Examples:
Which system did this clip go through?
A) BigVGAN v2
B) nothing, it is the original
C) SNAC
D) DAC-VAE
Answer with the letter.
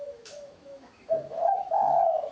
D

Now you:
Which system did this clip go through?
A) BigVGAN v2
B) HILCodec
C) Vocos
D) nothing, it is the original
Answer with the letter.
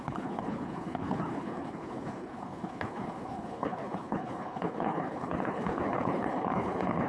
B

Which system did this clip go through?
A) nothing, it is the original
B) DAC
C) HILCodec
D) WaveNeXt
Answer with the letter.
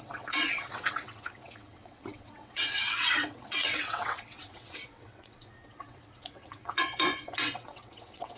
D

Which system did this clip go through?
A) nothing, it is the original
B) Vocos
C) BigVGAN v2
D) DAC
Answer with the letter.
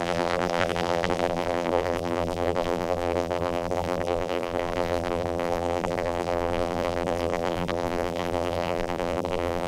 C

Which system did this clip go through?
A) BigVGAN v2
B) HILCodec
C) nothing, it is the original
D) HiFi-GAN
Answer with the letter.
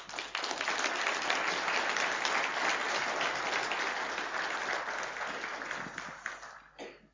C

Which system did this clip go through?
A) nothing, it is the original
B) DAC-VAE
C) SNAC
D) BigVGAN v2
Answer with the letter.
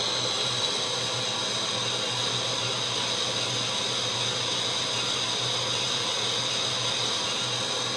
A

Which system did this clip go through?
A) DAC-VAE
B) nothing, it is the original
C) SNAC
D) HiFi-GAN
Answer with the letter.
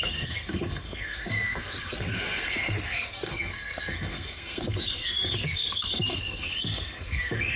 C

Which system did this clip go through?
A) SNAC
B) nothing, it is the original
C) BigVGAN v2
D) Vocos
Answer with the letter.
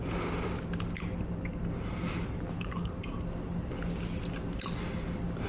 B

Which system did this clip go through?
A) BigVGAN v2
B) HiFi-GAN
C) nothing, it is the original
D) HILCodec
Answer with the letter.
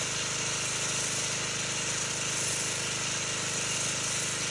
C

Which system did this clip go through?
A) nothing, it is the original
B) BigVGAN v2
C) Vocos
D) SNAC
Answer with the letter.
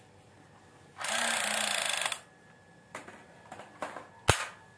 A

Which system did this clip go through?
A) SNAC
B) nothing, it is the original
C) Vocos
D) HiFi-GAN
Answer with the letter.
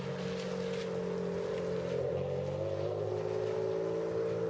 B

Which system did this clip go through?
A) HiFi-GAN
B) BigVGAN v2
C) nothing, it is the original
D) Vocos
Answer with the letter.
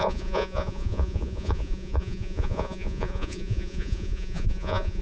D